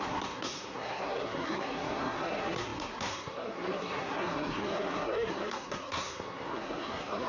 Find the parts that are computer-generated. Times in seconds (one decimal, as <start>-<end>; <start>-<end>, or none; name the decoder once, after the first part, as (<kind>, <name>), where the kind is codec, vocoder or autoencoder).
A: 0.0-7.3 (codec, SNAC)